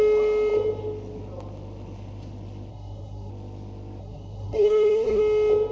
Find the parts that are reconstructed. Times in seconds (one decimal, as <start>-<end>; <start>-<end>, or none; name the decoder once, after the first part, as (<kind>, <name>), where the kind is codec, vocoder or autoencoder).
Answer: 2.7-3.3 (codec, SNAC); 4.0-5.2